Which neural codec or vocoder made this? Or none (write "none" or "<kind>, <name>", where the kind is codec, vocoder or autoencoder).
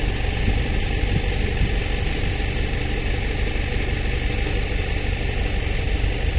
none